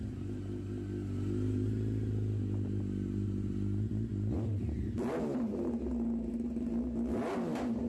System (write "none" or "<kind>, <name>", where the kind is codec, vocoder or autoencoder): none